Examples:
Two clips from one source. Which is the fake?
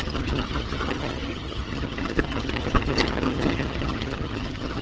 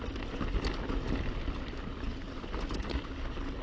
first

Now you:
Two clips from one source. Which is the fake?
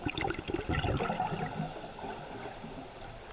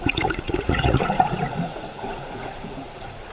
second